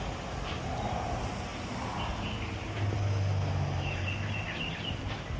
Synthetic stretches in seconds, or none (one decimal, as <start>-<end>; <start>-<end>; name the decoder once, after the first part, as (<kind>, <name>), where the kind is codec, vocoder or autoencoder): 0.0-1.5 (vocoder, BigVGAN v2); 4.7-5.4